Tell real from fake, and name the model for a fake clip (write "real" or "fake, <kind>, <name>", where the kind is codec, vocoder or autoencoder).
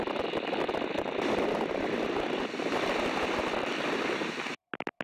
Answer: real